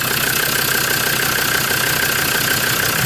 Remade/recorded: recorded